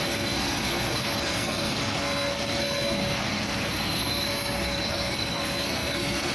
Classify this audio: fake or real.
fake